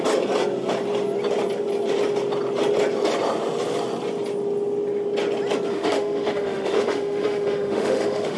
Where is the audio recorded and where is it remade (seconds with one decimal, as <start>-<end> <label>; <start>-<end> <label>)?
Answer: 0.0-5.7 recorded; 5.7-8.4 remade